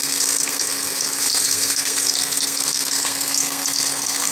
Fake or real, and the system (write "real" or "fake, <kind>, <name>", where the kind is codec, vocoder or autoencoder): fake, codec, SNAC